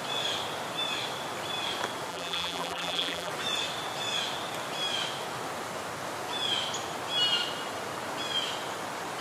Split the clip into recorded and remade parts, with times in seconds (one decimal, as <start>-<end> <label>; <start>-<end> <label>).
0.0-2.1 recorded; 2.1-3.3 remade; 3.3-9.2 recorded